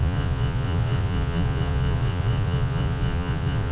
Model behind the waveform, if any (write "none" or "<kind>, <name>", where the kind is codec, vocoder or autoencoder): vocoder, Vocos